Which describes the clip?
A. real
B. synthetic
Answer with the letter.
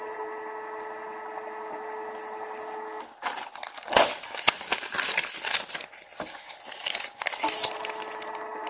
A